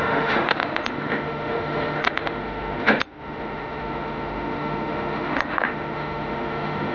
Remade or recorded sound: remade